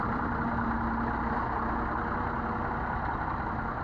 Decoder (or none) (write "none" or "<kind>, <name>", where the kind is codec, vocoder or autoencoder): none